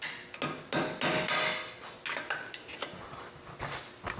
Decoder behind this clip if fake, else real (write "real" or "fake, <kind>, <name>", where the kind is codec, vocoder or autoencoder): real